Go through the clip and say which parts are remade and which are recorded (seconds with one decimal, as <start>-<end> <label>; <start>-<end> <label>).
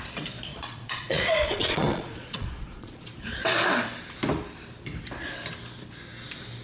0.0-0.5 recorded; 0.5-3.1 remade; 3.1-6.6 recorded